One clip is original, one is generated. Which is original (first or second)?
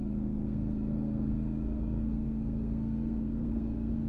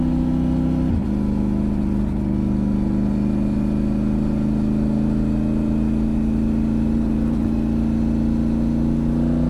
second